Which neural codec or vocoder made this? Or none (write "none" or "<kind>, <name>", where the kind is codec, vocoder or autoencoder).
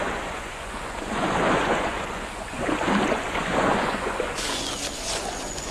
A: vocoder, Vocos